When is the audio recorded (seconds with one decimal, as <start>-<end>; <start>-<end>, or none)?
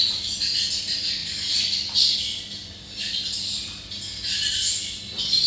0.0-5.5